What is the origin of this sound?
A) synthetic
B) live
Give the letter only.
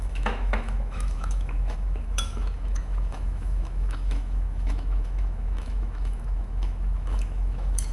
A